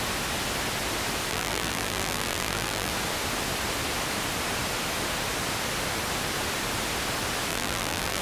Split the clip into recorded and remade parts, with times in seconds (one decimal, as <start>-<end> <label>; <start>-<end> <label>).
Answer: 0.0-1.3 recorded; 1.3-2.9 remade; 2.9-7.5 recorded; 7.5-8.2 remade

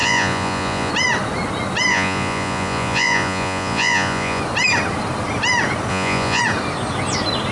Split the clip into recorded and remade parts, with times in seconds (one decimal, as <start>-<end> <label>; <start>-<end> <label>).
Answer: 0.0-0.9 remade; 0.9-1.9 recorded; 1.9-4.4 remade; 4.4-5.9 recorded; 5.9-6.4 remade; 6.4-7.5 recorded

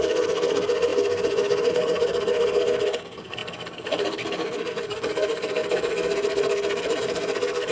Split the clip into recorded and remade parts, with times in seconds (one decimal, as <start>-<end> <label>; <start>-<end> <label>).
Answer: 0.0-7.7 remade

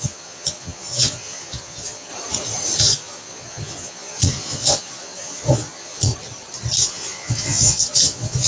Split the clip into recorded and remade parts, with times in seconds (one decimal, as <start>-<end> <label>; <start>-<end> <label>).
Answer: 0.0-2.1 remade; 2.1-2.8 recorded; 2.8-6.1 remade; 6.1-6.8 recorded; 6.8-8.5 remade

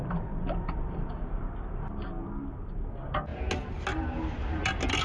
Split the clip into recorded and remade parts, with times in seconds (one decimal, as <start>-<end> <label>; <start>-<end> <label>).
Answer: 0.0-5.0 recorded

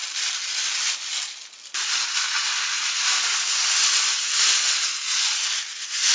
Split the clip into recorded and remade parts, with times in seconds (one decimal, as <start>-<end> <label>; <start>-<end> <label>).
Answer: 0.0-6.1 recorded

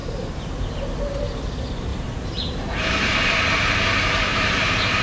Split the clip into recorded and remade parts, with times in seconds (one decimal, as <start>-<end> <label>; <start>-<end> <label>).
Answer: 0.0-1.4 remade; 1.4-1.9 recorded; 1.9-3.3 remade; 3.3-4.3 recorded; 4.3-5.0 remade